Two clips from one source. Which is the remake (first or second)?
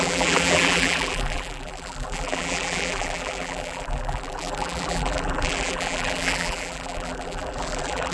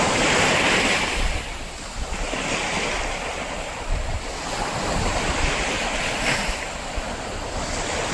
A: first